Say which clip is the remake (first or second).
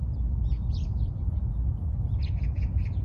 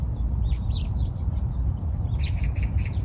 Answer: second